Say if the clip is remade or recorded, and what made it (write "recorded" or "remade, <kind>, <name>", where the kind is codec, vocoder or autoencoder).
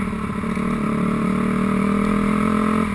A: recorded